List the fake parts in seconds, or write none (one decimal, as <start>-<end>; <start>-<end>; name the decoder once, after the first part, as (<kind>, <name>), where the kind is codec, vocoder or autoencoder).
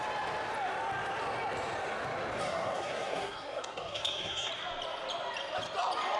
2.4-4.5 (codec, SNAC)